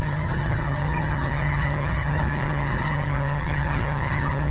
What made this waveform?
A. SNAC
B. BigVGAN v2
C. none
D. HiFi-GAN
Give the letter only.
D